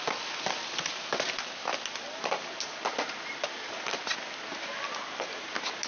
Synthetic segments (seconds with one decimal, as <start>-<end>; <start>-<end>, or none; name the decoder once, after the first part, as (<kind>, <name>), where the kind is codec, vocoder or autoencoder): none